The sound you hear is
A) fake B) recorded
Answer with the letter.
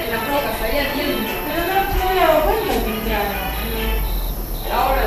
A